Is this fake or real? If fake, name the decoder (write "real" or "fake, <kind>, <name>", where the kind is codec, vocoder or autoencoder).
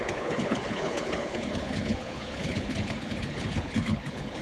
fake, codec, HILCodec